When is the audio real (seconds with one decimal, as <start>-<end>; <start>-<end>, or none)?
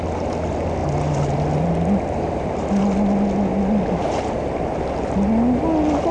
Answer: 0.0-6.1